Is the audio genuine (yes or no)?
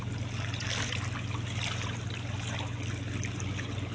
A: yes